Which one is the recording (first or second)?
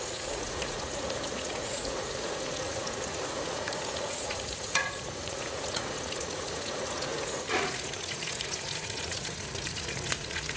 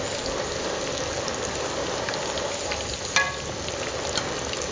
second